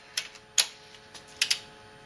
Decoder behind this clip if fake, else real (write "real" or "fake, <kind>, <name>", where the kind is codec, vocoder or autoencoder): real